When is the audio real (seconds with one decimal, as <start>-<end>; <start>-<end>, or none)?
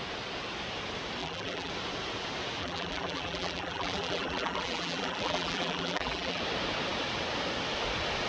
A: 0.0-1.2; 1.7-2.6; 6.4-8.3